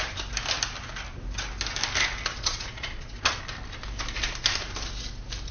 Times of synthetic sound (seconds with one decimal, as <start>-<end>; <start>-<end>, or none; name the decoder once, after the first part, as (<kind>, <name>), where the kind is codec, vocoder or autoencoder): 2.3-3.4 (vocoder, Vocos)